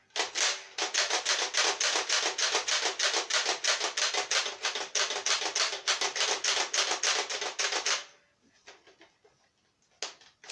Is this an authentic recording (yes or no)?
yes